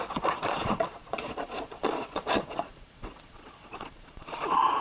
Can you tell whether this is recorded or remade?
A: remade